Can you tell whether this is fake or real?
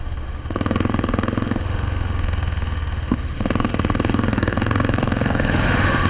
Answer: fake